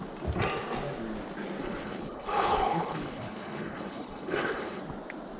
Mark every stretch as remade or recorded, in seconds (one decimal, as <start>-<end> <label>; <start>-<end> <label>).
0.0-1.6 recorded; 1.6-4.8 remade; 4.8-5.4 recorded